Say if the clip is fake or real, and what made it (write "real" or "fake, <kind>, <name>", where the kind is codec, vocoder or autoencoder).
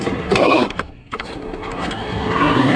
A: fake, codec, SNAC